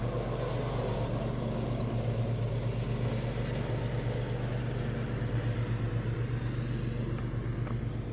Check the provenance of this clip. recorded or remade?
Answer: recorded